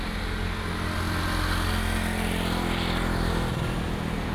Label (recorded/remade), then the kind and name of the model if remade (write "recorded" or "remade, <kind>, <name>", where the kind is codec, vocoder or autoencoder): recorded